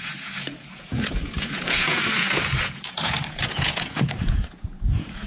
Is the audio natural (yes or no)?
no